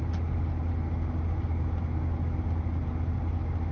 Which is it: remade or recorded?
recorded